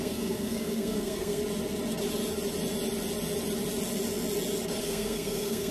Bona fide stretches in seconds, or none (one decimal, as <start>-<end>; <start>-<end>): 1.4-4.8